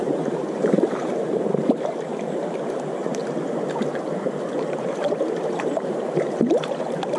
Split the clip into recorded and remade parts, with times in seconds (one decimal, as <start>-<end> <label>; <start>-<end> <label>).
0.0-3.2 remade; 3.2-4.2 recorded; 4.2-7.2 remade